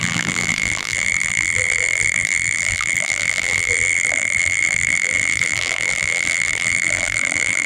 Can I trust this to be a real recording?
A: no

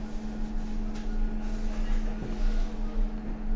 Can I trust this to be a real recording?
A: yes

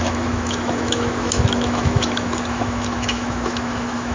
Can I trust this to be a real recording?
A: no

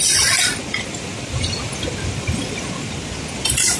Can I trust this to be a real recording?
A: yes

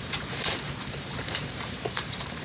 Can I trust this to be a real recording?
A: no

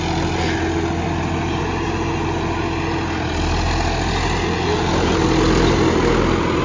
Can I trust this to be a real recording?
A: yes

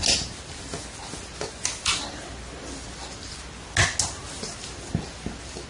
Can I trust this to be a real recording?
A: yes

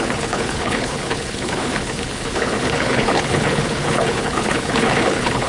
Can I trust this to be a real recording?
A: no